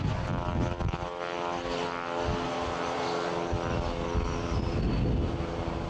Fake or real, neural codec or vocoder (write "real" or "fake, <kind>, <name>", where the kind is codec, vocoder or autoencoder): real